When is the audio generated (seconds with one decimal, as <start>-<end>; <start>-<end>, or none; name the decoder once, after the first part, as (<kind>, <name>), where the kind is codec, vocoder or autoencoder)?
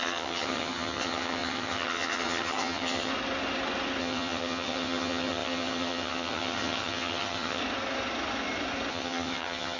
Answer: 0.0-3.1 (vocoder, HiFi-GAN); 4.0-7.6; 8.9-9.8